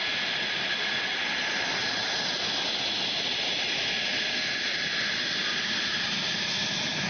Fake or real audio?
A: real